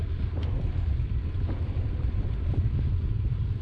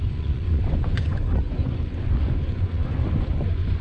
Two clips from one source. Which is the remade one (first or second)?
second